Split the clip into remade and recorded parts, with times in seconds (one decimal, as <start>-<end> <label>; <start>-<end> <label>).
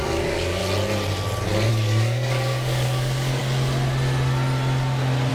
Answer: 0.0-0.6 remade; 0.6-1.7 recorded; 1.7-3.4 remade; 3.4-5.3 recorded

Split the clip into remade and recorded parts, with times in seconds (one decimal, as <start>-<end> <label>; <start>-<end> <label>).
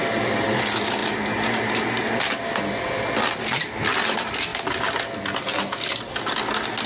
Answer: 0.0-6.9 recorded